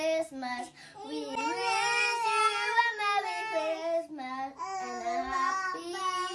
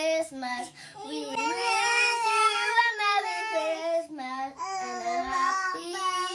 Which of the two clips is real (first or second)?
first